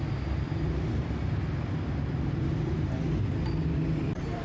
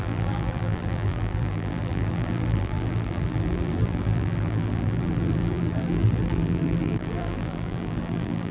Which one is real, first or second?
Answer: first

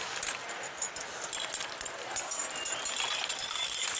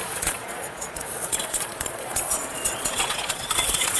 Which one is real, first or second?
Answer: first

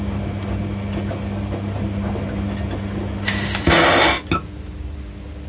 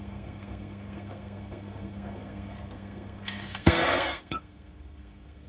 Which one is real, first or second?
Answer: first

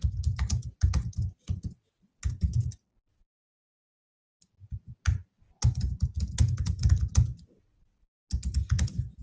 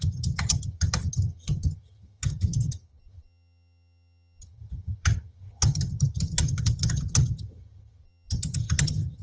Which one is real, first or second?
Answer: first